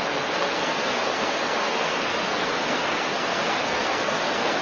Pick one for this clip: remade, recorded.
remade